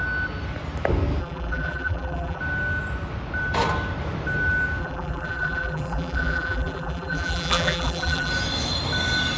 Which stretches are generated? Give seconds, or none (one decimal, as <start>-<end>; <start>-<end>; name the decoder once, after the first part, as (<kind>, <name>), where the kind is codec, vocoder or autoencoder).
1.2-2.4 (vocoder, BigVGAN v2); 4.8-8.3